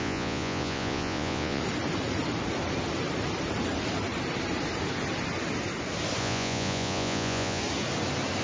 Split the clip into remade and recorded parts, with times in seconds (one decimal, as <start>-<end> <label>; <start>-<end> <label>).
0.0-1.6 remade; 1.6-6.2 recorded; 6.2-7.6 remade; 7.6-8.4 recorded